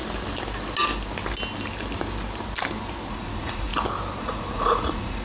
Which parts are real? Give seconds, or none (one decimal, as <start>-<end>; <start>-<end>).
0.0-3.1; 3.7-4.2